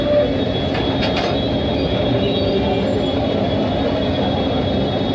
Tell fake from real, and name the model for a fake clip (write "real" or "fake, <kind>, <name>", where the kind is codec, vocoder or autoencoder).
real